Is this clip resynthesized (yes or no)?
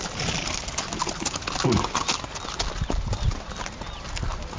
no